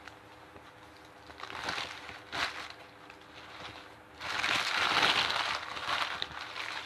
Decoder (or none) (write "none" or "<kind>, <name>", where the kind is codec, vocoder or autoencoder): none